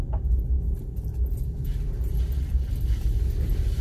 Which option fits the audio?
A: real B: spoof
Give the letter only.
A